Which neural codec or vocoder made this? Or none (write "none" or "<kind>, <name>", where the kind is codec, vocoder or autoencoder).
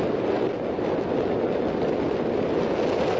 none